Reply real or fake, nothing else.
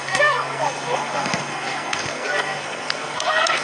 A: fake